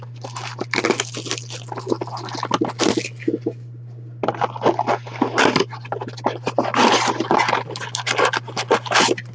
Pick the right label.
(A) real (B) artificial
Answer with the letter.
A